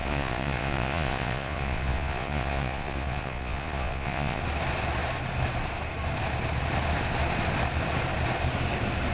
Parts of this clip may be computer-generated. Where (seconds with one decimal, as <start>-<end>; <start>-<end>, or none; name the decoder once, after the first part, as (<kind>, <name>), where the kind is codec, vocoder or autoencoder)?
0.0-4.4 (vocoder, Vocos)